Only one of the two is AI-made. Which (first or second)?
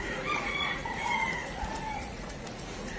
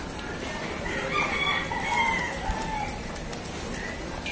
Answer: first